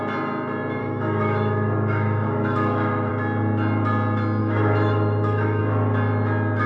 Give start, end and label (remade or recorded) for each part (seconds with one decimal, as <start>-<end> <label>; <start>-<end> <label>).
0.0-0.8 recorded; 0.8-3.1 remade; 3.1-4.4 recorded; 4.4-5.6 remade; 5.6-6.7 recorded